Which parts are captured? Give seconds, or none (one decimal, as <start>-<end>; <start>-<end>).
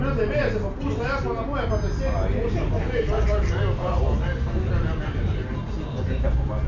0.0-6.7